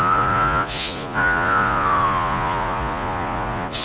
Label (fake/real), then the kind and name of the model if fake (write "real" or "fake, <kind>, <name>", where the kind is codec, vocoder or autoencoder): fake, vocoder, Vocos